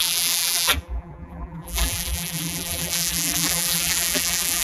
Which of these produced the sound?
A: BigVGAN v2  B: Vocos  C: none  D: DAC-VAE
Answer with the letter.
A